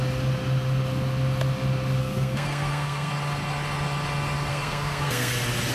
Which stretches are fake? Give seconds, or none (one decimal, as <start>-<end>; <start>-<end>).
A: 2.0-3.1; 4.5-5.3